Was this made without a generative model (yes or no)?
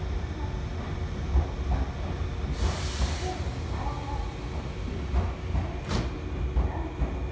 yes